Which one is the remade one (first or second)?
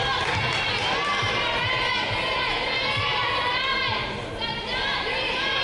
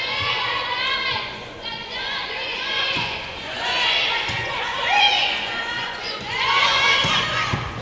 second